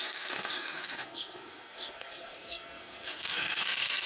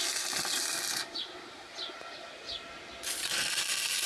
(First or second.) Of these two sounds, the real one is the second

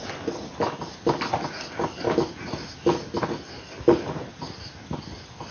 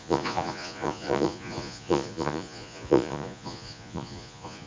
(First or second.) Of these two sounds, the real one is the first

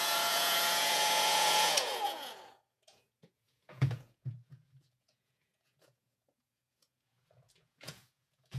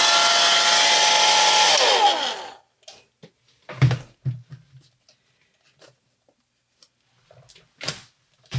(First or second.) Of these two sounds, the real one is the second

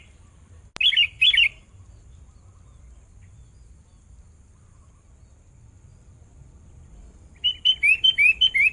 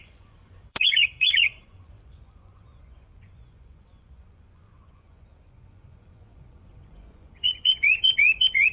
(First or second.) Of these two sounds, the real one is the first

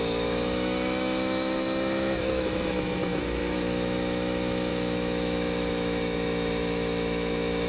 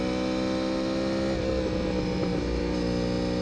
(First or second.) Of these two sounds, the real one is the second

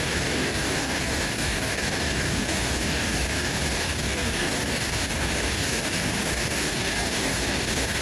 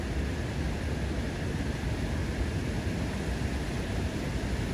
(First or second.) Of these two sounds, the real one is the second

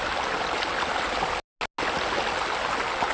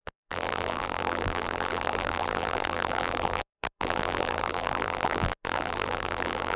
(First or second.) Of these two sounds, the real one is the first